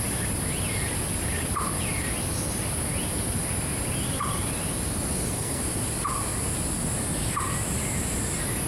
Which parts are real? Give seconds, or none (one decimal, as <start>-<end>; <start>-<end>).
0.0-5.1; 5.6-8.7